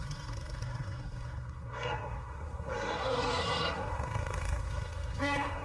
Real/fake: fake